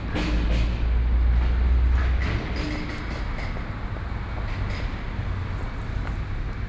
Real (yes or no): yes